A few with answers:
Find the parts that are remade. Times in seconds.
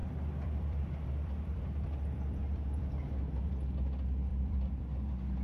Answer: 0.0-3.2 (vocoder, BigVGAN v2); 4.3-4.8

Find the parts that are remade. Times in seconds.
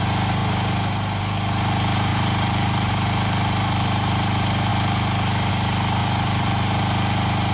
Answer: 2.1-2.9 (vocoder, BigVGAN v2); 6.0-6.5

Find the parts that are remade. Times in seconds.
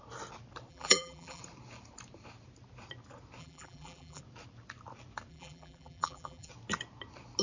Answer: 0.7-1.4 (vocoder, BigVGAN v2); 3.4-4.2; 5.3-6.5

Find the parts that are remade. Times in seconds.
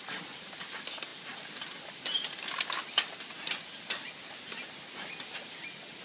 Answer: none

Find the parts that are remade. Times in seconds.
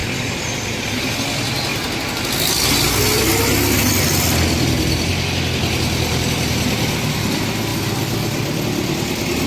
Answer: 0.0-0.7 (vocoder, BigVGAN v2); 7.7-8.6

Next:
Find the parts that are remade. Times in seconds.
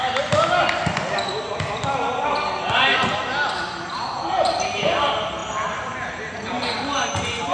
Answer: 0.0-7.5 (vocoder, BigVGAN v2)